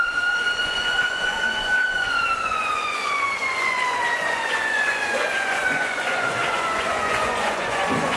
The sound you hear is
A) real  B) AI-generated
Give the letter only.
B